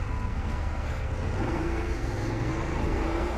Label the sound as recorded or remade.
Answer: remade